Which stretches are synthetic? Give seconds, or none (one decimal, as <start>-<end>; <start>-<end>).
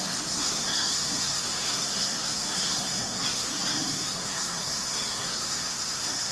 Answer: 0.0-6.3